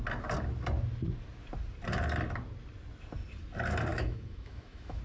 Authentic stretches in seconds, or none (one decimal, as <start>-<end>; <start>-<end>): 0.0-3.9